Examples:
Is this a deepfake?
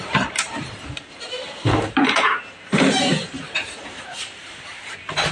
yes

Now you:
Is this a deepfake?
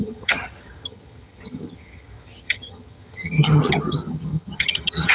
yes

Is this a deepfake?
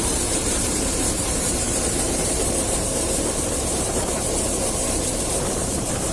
yes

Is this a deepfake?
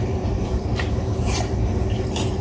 yes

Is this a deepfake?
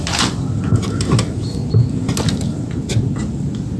no